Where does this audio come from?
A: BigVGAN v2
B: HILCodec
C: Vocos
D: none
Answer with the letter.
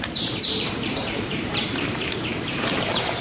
A